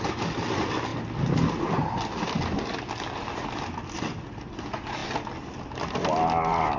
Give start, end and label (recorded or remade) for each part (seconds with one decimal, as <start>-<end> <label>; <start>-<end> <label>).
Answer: 0.0-6.8 recorded